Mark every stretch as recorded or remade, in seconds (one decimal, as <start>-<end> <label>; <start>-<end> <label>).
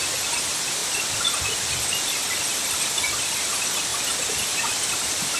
0.0-3.9 recorded; 3.9-5.4 remade